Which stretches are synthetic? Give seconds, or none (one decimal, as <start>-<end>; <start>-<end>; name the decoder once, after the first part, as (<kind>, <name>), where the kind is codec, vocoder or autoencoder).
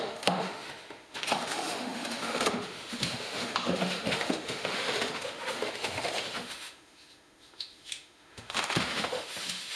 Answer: 0.0-9.8 (autoencoder, DAC-VAE)